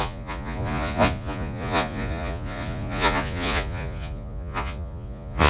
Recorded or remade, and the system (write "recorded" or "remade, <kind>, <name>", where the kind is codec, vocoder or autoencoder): remade, vocoder, Vocos